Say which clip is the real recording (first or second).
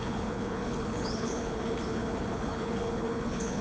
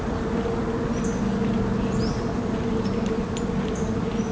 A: second